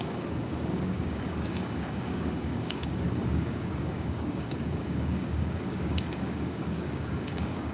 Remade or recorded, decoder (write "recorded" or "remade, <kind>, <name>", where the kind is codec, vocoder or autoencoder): remade, codec, DAC